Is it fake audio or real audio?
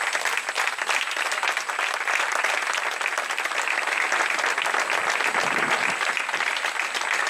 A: real